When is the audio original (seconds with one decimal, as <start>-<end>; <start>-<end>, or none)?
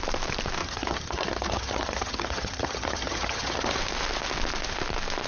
0.0-0.6; 3.8-5.3